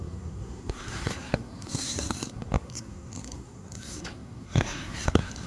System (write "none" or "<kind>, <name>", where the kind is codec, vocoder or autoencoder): codec, SNAC